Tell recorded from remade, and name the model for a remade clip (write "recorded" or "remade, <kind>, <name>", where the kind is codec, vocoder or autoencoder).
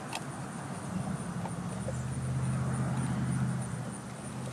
recorded